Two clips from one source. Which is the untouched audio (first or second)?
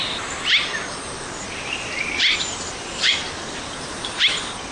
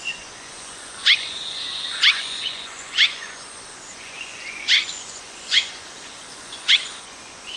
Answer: first